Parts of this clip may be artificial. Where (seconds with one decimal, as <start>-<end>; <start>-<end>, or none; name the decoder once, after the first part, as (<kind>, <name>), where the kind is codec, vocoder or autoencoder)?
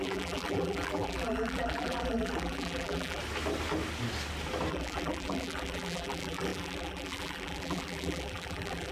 0.0-3.2 (vocoder, BigVGAN v2); 4.7-8.9